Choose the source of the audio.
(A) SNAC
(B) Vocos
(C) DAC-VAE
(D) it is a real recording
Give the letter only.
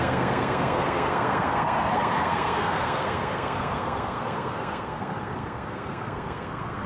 A